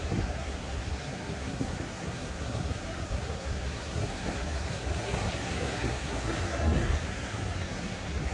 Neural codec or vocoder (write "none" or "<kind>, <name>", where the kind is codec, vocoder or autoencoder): codec, SNAC